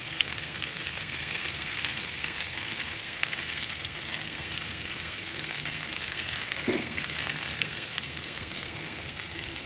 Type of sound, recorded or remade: remade